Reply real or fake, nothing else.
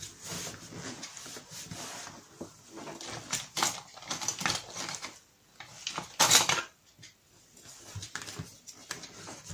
real